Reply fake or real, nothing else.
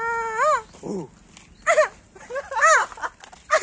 real